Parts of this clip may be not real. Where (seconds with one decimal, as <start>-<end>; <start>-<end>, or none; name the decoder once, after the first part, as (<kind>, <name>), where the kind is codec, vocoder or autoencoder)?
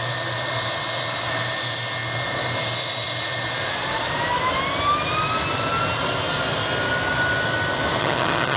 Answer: 8.0-8.6 (vocoder, HiFi-GAN)